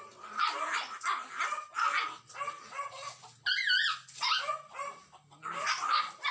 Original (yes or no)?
yes